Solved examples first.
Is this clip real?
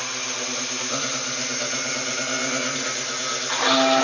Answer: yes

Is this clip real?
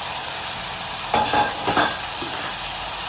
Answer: yes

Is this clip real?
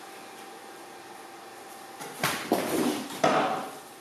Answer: yes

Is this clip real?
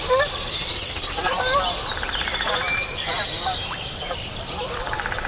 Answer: no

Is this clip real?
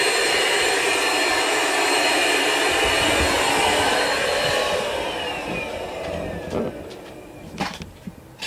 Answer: yes